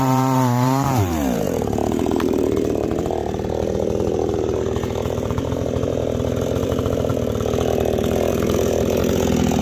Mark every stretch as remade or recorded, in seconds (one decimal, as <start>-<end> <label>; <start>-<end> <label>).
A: 0.0-7.1 remade; 7.1-8.3 recorded; 8.3-9.0 remade; 9.0-9.6 recorded